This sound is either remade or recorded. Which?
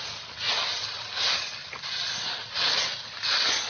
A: recorded